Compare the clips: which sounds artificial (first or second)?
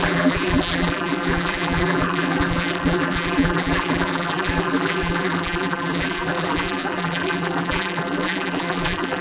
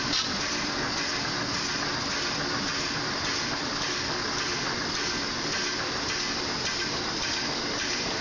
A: first